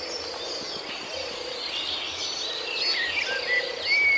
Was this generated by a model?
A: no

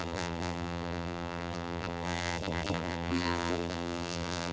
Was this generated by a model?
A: yes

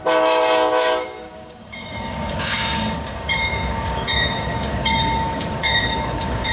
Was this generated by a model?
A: yes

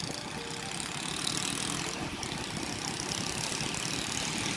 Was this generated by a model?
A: no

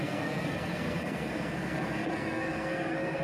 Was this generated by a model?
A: yes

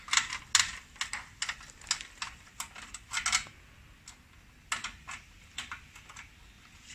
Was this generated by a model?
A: no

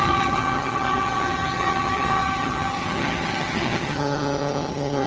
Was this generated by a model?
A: yes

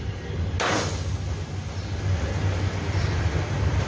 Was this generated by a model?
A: no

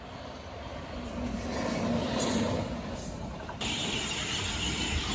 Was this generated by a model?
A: no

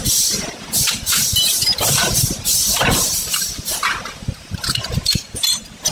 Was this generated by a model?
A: no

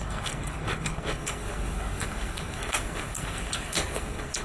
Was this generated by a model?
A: yes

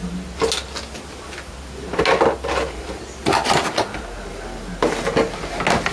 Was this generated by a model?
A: no